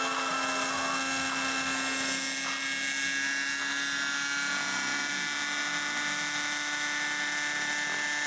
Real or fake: real